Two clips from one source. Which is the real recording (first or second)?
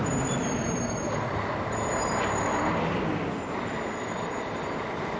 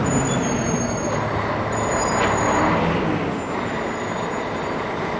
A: second